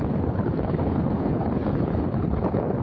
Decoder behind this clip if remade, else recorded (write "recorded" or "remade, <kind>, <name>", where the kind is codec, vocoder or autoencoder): remade, codec, HILCodec